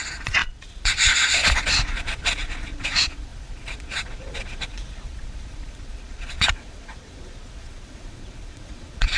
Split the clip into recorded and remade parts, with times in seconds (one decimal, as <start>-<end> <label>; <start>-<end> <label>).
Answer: 0.0-9.2 remade